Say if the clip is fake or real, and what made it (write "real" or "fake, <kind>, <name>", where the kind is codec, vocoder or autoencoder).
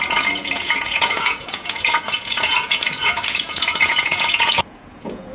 fake, vocoder, Vocos